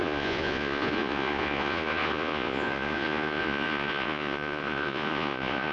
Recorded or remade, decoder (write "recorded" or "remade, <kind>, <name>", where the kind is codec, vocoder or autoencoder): remade, vocoder, Vocos